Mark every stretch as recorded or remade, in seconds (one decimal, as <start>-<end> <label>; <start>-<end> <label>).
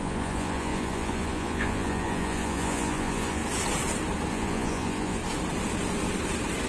0.0-3.4 remade; 3.4-4.3 recorded; 4.3-5.2 remade; 5.2-6.7 recorded